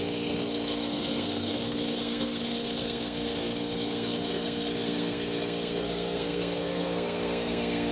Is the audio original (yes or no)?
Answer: no